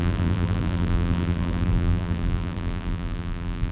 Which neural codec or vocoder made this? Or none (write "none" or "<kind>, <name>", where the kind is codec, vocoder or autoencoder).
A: vocoder, BigVGAN v2